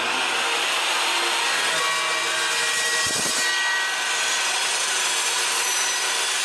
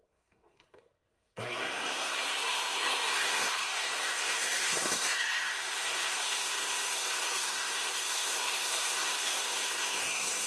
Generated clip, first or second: second